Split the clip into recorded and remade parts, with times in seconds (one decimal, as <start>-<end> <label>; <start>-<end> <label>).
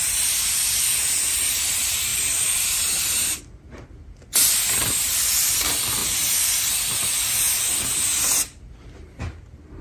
0.0-2.1 recorded; 2.1-3.4 remade; 3.4-9.8 recorded